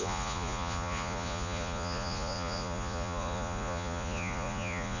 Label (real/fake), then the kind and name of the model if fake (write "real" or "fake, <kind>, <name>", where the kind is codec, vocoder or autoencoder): fake, vocoder, Vocos